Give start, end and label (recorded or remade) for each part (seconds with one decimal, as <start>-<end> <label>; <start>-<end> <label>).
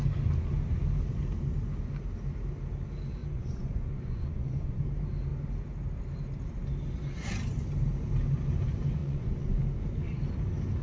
0.0-3.2 recorded; 3.2-4.8 remade; 4.8-9.0 recorded; 9.0-9.6 remade; 9.6-10.8 recorded